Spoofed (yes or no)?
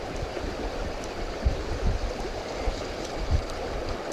no